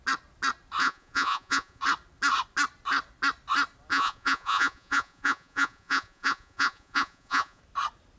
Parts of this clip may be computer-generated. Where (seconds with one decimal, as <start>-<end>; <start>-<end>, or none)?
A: 0.8-1.8; 3.9-7.6